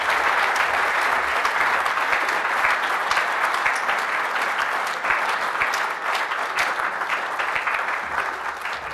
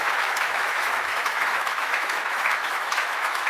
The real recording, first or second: first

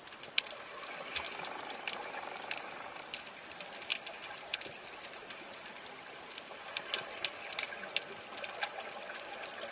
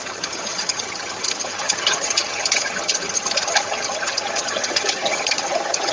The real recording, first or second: first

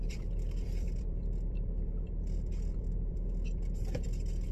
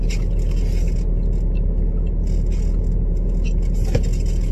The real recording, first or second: second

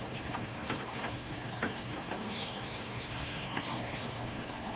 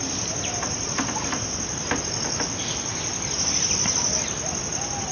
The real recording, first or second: second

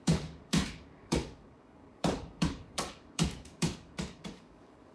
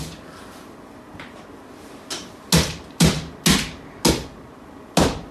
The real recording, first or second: second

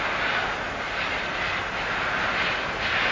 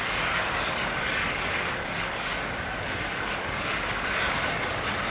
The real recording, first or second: first